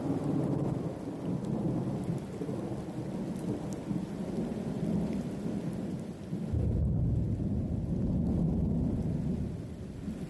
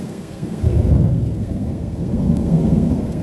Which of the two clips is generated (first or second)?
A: second